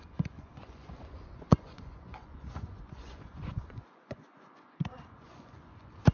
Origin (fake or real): fake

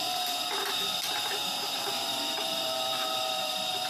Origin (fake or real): fake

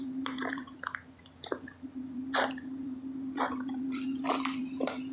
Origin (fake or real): fake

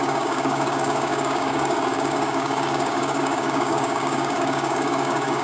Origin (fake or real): fake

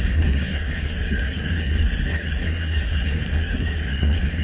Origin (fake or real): fake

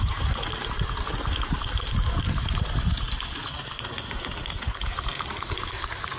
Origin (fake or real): real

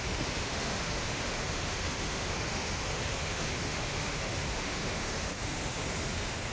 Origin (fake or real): fake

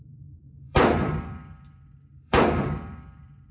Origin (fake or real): fake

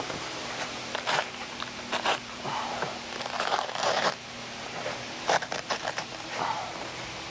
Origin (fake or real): fake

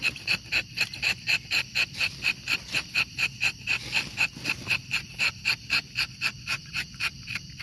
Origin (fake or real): fake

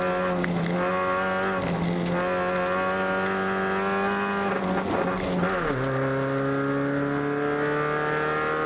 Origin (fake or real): real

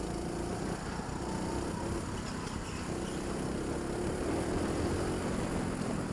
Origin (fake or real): real